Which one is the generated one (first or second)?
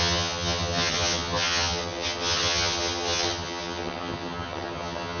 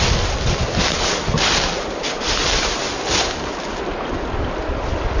first